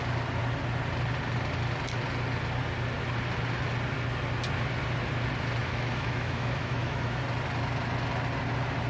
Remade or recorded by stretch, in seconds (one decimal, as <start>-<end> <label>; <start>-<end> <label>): 0.0-5.6 recorded; 5.6-7.2 remade; 7.2-8.9 recorded